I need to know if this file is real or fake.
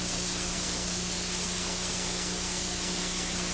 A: fake